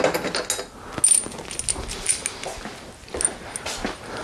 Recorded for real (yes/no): yes